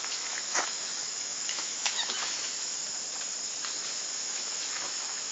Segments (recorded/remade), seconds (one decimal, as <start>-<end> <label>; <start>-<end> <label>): 0.0-2.8 remade; 2.8-4.1 recorded; 4.1-5.3 remade